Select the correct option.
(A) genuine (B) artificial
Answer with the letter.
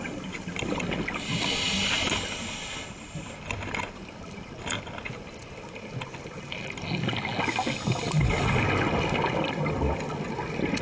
A